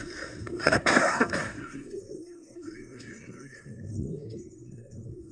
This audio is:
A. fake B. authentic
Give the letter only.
A